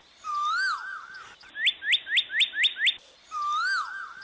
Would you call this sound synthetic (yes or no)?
no